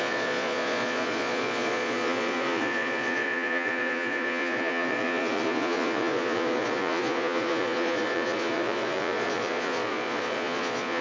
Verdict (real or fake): fake